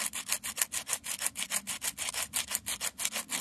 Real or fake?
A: real